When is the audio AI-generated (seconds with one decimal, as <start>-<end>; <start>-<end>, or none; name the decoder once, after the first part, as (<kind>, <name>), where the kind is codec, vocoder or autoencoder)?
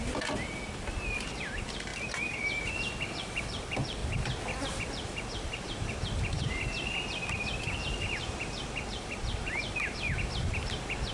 0.0-1.9 (vocoder, BigVGAN v2); 2.6-4.0; 4.8-11.1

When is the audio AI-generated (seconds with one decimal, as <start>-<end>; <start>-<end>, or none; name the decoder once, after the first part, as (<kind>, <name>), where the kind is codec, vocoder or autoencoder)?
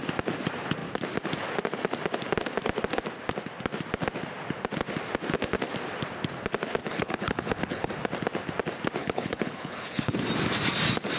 6.8-7.9 (codec, HILCodec); 9.0-10.1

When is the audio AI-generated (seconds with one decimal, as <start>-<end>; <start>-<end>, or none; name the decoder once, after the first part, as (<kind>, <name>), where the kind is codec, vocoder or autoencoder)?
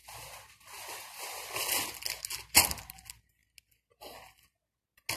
none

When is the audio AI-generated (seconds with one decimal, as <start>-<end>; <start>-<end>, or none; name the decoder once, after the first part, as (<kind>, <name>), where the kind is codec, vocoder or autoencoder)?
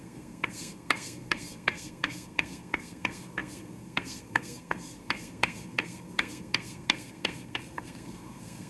0.0-8.7 (codec, SNAC)